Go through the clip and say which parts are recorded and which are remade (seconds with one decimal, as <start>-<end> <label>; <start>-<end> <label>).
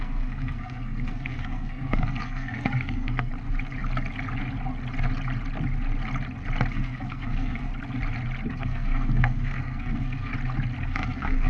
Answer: 0.0-3.3 remade; 3.3-6.7 recorded; 6.7-7.7 remade; 7.7-8.5 recorded; 8.5-10.3 remade; 10.3-10.8 recorded; 10.8-11.5 remade